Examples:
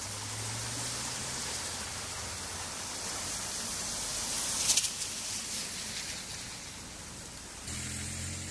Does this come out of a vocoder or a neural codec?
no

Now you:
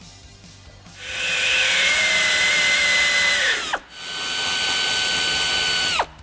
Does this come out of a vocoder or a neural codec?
no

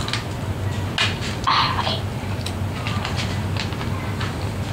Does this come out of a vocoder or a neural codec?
no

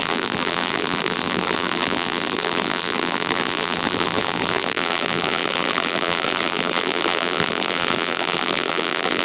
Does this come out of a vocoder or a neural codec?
yes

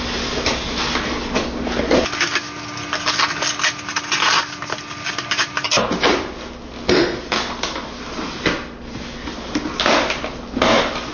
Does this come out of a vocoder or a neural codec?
no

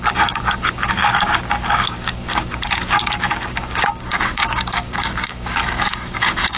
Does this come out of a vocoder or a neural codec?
yes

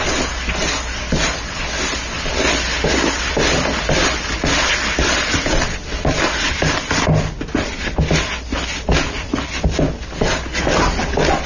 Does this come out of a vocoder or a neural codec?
no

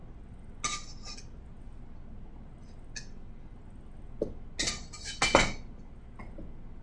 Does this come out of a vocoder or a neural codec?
no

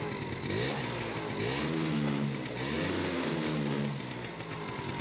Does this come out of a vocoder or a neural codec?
no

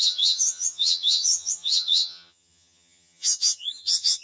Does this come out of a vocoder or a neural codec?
yes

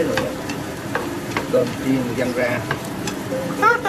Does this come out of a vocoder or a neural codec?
yes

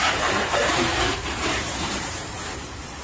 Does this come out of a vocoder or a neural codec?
yes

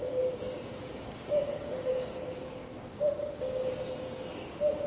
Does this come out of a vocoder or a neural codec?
yes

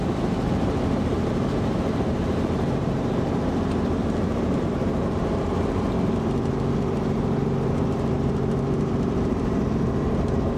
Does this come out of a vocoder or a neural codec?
yes